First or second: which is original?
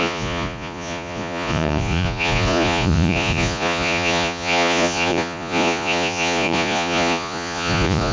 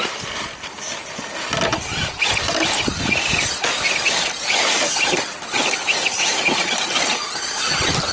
second